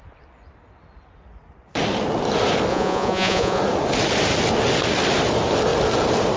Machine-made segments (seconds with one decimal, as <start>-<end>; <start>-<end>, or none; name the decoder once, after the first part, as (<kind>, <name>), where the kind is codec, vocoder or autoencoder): 2.7-3.6 (vocoder, Vocos)